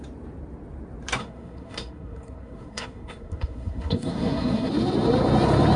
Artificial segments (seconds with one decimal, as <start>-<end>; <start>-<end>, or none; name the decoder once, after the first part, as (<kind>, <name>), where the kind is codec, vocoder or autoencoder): 1.2-4.7 (codec, SNAC)